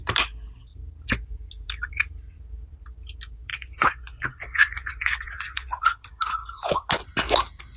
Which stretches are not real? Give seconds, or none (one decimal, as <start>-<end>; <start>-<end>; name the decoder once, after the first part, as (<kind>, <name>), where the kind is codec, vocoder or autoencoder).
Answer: 3.5-5.8 (vocoder, Vocos)

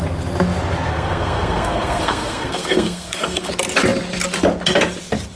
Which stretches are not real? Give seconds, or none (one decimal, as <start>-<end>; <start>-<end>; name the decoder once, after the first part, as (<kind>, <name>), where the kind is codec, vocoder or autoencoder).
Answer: 0.9-3.5 (codec, SNAC)

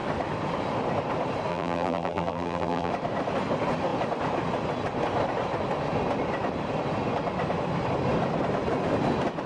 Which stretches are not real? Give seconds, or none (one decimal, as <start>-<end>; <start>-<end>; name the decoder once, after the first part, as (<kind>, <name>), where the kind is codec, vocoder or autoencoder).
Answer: 1.5-2.9 (vocoder, BigVGAN v2)

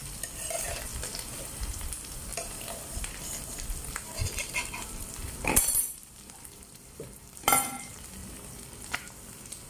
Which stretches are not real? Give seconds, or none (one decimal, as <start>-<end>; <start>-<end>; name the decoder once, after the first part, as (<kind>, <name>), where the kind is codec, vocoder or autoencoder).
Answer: 0.0-0.9 (vocoder, BigVGAN v2); 1.7-8.2

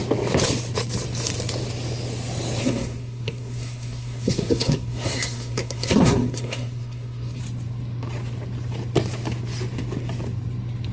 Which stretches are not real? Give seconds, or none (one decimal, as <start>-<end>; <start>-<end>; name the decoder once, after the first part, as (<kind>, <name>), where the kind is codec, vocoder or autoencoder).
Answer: 2.6-7.4 (codec, SNAC)

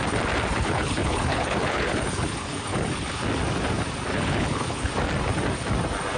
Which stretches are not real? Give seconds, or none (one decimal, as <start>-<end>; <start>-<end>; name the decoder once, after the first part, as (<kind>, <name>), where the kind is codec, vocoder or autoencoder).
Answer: 0.5-3.2 (codec, HILCodec); 4.1-4.9

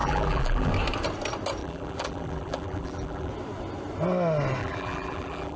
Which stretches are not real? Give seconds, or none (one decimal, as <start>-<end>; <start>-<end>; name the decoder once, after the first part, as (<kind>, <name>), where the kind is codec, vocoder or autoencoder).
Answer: 0.0-0.7 (vocoder, BigVGAN v2); 1.6-3.3; 4.6-5.6

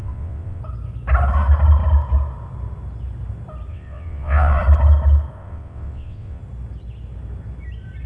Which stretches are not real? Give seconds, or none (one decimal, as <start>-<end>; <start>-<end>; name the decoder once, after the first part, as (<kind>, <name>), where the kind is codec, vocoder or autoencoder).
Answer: 0.0-0.6 (vocoder, WaveNeXt); 3.7-4.6; 5.4-6.4